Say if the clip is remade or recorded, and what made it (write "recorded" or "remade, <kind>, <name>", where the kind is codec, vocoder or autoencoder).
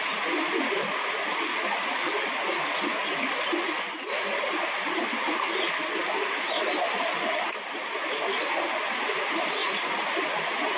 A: recorded